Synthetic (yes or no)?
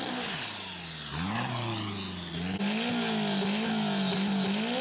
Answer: no